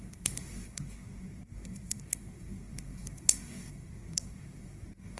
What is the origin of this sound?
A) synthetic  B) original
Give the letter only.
A